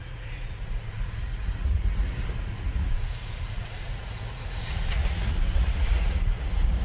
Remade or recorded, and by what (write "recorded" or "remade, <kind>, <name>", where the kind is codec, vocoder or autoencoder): remade, vocoder, Vocos